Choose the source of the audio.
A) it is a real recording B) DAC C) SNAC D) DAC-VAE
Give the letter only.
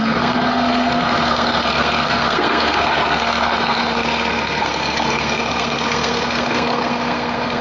C